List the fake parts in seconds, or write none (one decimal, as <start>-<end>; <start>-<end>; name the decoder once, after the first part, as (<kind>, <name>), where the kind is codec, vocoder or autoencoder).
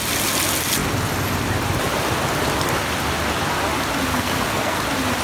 4.1-4.8 (codec, SNAC)